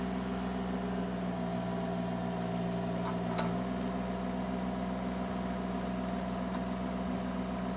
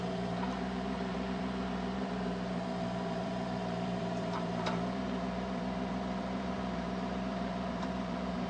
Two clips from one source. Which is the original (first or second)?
first